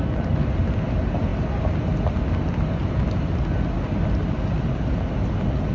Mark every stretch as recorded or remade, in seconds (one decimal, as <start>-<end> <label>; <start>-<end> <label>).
0.0-5.7 recorded